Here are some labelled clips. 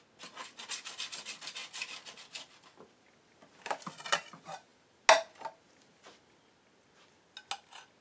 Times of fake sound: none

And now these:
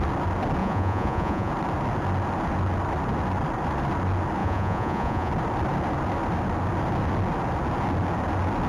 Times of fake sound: 0.6-1.5; 4.4-5.3

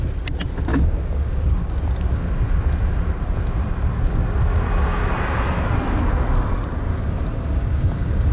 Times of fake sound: 0.7-1.6; 6.9-8.3

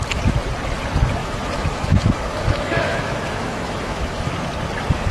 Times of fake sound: 1.2-4.3

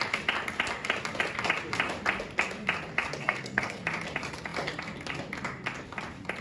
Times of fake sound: 3.2-3.8

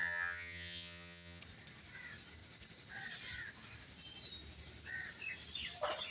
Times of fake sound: 0.0-1.4